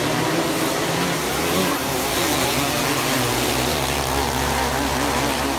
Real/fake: real